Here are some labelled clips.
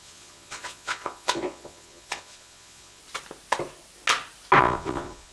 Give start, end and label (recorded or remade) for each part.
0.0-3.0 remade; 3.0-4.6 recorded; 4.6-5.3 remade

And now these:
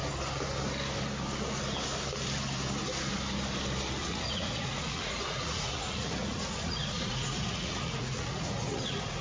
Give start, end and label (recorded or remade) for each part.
0.0-4.0 recorded; 4.0-9.2 remade

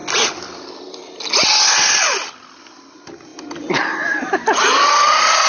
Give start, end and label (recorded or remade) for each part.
0.0-5.5 recorded